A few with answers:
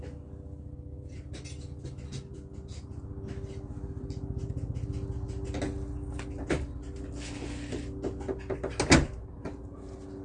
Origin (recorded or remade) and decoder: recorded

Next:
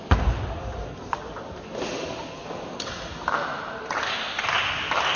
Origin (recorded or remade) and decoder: recorded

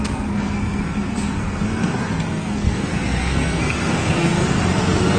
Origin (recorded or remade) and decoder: remade, codec, SNAC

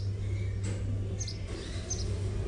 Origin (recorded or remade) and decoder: recorded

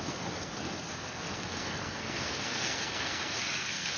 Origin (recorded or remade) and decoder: remade, codec, SNAC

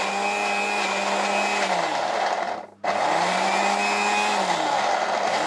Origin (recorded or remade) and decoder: recorded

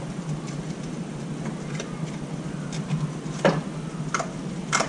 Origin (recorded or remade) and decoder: recorded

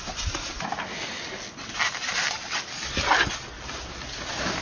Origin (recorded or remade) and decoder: recorded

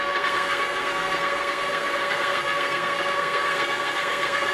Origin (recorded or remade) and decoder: remade, codec, SNAC